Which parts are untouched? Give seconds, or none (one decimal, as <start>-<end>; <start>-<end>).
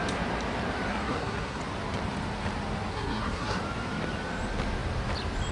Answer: 0.0-0.9; 1.6-2.9; 3.6-5.5